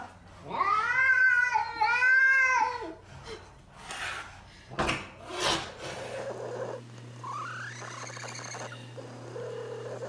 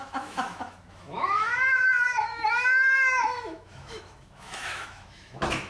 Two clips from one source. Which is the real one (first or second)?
first